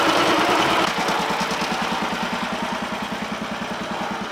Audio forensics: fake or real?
real